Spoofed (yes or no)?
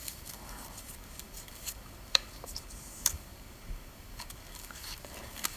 yes